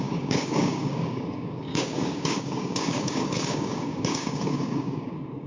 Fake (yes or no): yes